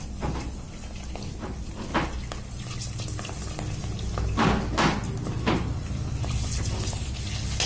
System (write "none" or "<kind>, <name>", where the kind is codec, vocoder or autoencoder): none